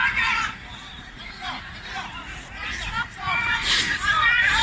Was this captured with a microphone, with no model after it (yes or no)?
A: no